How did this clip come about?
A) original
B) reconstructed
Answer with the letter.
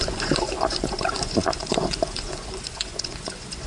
B